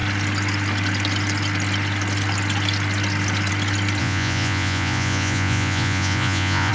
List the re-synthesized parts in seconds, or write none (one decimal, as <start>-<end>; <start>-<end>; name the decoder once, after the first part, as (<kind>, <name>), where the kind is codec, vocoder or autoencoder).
4.0-6.7 (vocoder, Vocos)